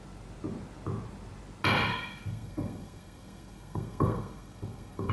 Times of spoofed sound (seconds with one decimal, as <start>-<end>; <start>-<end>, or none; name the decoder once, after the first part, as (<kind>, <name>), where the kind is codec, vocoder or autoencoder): 1.9-5.1 (codec, SNAC)